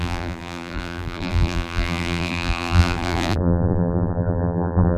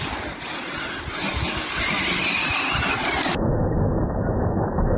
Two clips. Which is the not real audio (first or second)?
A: first